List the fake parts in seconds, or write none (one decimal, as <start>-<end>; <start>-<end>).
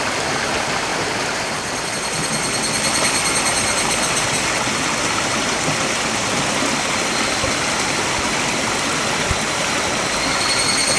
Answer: none